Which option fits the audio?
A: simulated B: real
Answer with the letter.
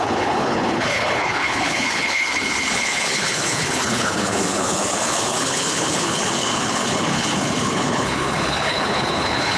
A